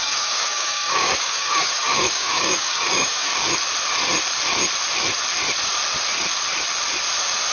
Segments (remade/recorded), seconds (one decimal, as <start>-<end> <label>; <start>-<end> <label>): 0.0-3.3 remade; 3.3-7.5 recorded